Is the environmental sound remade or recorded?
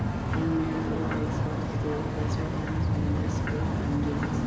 recorded